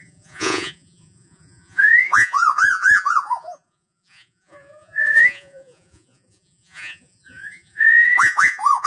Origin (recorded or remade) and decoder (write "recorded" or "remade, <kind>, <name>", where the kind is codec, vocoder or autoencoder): remade, vocoder, Vocos